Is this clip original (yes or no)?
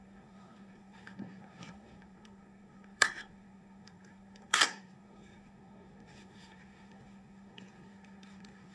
no